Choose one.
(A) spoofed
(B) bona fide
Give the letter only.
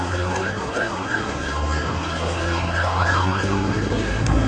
A